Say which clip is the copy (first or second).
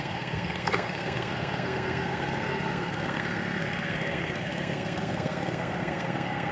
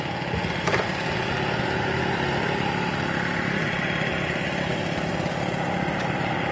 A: first